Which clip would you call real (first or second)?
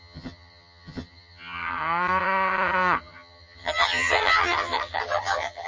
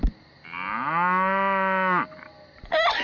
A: second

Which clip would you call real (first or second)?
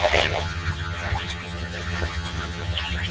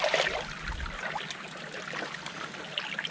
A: second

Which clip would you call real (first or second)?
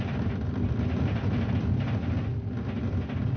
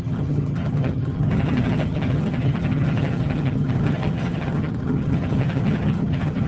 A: first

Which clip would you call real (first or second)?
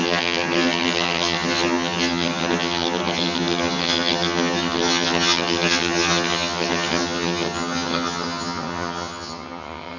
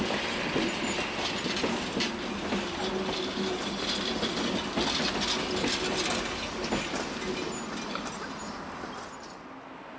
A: second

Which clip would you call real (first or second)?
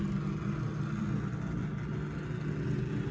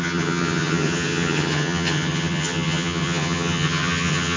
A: first